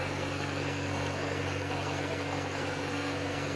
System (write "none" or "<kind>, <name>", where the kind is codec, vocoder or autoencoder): codec, SNAC